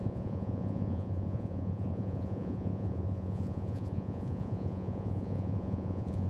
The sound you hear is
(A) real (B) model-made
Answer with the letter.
B